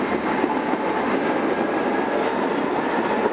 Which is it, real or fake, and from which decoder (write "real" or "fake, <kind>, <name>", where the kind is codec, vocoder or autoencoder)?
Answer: real